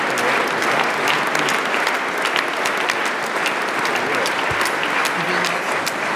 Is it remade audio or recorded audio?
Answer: recorded